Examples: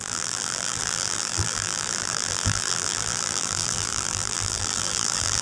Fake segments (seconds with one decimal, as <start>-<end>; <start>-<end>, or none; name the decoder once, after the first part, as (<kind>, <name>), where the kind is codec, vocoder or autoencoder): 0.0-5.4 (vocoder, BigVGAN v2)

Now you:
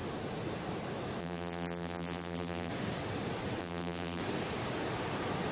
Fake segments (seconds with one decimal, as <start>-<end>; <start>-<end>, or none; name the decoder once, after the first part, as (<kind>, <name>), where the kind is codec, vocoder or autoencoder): 1.2-2.7 (vocoder, BigVGAN v2); 3.6-4.2

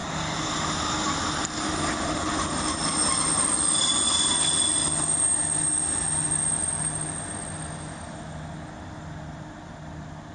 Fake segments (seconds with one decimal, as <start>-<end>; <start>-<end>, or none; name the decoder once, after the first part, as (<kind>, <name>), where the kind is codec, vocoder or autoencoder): none

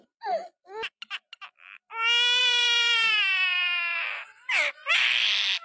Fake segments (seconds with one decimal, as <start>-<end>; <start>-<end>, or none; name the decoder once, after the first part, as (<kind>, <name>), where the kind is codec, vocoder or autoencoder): 2.4-4.9 (vocoder, BigVGAN v2)

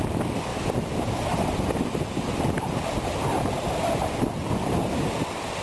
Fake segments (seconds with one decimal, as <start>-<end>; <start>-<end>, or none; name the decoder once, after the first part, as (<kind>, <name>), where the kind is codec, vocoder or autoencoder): 0.5-2.6 (vocoder, BigVGAN v2)

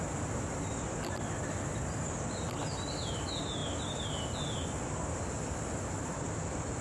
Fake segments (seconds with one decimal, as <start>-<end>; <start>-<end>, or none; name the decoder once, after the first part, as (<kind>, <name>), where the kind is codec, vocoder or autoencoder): none

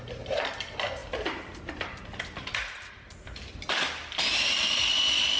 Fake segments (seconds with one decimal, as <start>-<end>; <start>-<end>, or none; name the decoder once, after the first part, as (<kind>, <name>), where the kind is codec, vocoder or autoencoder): 1.0-4.2 (vocoder, BigVGAN v2)

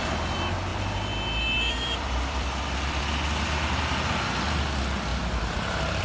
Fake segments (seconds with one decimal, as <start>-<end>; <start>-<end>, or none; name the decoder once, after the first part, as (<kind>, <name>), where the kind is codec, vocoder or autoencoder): 0.7-3.0 (vocoder, BigVGAN v2); 5.1-6.0